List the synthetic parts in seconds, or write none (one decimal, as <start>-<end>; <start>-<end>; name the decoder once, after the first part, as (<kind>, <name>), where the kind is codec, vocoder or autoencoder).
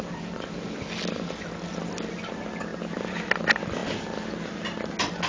none